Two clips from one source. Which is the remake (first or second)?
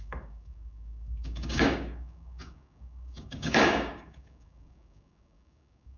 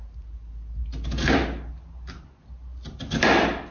first